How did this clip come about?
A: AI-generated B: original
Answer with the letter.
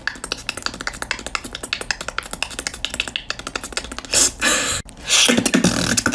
B